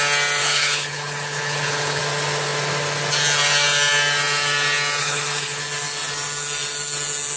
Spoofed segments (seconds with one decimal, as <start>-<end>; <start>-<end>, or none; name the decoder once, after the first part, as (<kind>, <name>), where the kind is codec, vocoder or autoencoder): 0.4-2.0 (codec, HILCodec); 5.0-5.6